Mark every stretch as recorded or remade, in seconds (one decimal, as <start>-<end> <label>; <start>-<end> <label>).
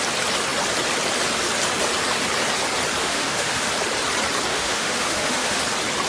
0.0-3.0 recorded; 3.0-3.7 remade; 3.7-4.5 recorded; 4.5-5.6 remade; 5.6-6.1 recorded